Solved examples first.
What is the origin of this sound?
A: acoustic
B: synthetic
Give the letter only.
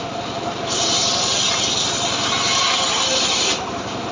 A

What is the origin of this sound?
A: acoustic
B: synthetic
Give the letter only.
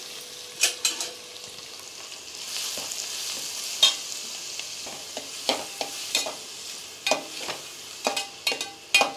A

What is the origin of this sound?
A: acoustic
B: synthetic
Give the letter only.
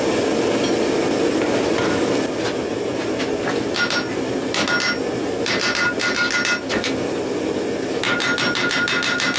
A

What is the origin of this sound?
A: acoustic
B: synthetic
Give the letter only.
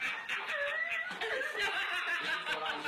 A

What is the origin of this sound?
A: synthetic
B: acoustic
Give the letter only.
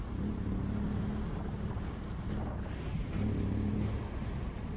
B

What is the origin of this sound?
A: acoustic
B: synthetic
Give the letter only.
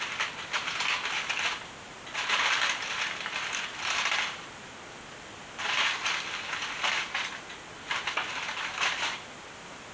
A